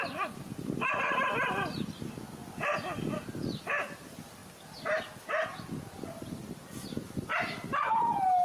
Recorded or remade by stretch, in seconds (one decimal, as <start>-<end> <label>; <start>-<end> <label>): 0.0-8.4 recorded